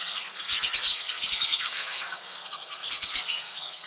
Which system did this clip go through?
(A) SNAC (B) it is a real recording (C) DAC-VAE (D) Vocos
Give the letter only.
A